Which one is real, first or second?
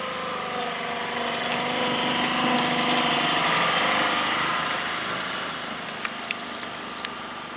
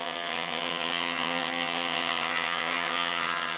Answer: first